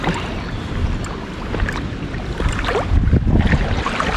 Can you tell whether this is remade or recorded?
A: recorded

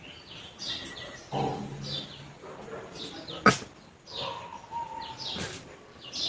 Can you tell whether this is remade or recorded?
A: recorded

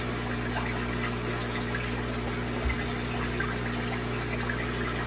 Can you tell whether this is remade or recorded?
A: recorded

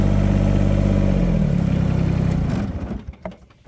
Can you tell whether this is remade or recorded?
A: recorded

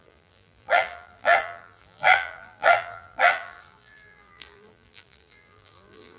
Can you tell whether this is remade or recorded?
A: remade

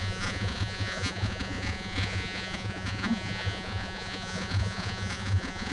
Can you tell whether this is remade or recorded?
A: remade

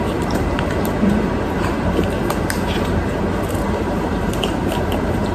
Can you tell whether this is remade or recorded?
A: remade